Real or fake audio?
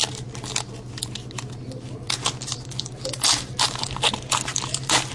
real